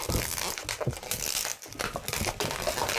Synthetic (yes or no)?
no